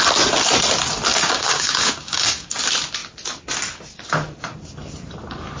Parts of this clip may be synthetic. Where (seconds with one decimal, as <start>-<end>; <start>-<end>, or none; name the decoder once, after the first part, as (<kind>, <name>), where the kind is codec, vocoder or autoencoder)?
1.1-2.6 (codec, DAC)